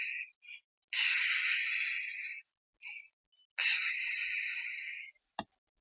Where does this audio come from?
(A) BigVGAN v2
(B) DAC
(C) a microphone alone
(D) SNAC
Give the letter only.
C